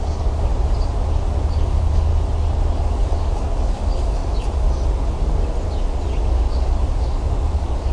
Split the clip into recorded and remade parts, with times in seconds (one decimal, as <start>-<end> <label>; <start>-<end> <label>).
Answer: 0.0-0.5 remade; 0.5-1.5 recorded; 1.5-2.1 remade; 2.1-2.9 recorded; 2.9-4.2 remade; 4.2-6.2 recorded; 6.2-7.9 remade

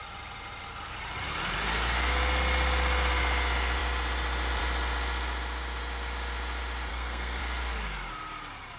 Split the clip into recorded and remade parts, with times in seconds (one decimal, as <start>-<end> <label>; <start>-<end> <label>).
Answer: 0.0-6.9 recorded; 6.9-7.4 remade; 7.4-8.8 recorded

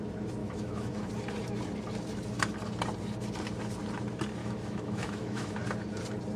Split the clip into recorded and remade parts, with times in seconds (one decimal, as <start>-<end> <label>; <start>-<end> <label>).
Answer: 0.0-0.4 recorded; 0.4-1.1 remade; 1.1-4.4 recorded; 4.4-5.6 remade; 5.6-6.4 recorded

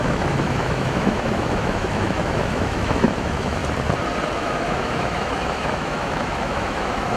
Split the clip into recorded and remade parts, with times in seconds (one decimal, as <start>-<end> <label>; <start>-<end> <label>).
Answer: 0.0-3.6 remade; 3.6-4.3 recorded; 4.3-7.2 remade